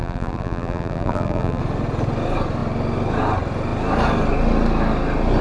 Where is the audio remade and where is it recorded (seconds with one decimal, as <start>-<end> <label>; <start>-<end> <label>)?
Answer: 0.0-1.6 remade; 1.6-5.4 recorded